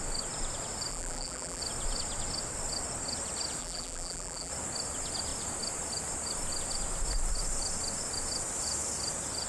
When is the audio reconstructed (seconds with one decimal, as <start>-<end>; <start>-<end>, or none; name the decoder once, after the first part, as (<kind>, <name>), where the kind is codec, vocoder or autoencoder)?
0.9-1.6 (vocoder, BigVGAN v2); 3.6-4.5